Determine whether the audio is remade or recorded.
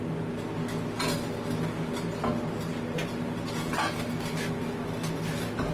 recorded